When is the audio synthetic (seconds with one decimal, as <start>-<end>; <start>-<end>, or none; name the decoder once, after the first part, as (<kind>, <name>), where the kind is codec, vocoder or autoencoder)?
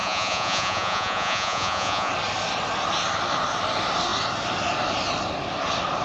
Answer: 0.0-2.1 (vocoder, Vocos)